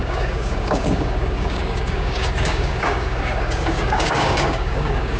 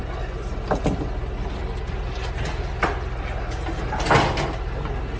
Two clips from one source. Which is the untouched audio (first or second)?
second